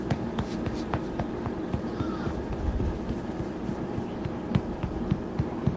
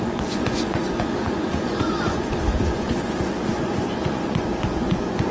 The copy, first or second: second